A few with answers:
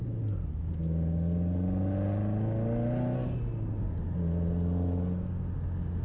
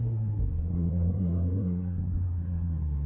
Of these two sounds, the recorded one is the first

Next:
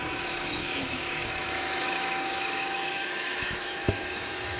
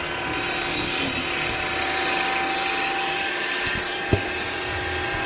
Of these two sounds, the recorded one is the second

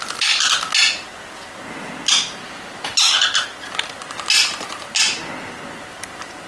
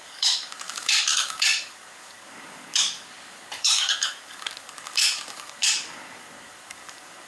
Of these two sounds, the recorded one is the first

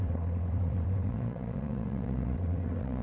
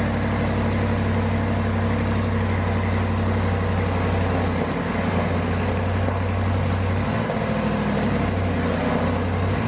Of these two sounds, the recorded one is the second